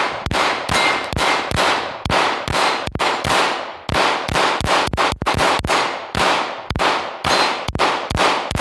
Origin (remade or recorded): recorded